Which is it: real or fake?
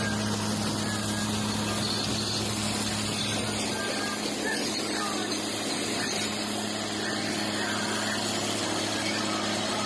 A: real